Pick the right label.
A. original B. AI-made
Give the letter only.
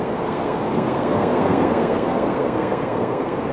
B